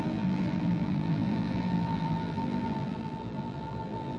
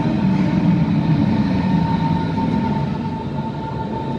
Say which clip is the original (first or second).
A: second